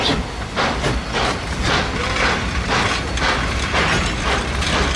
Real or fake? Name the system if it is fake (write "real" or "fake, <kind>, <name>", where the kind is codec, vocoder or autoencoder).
real